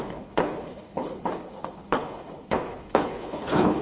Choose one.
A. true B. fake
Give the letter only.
B